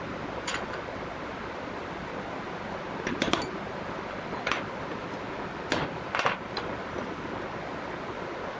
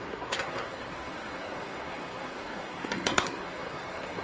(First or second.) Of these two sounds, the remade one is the second